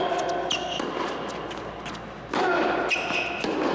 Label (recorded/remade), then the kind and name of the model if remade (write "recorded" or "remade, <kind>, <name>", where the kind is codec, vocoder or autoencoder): recorded